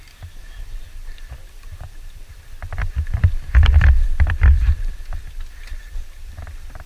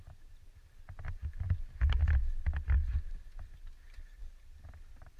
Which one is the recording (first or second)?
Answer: second